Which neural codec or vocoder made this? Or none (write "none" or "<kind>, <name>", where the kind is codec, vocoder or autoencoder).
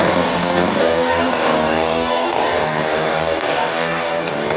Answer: codec, DAC